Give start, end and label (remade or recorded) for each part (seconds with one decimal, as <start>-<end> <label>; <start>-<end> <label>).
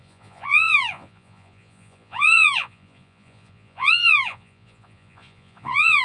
0.0-6.0 remade